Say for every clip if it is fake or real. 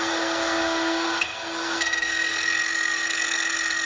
fake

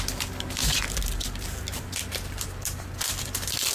real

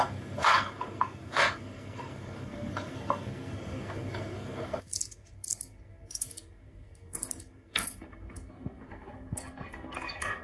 fake